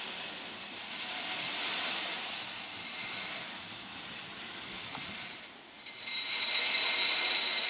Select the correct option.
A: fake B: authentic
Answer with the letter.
B